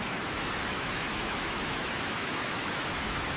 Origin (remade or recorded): remade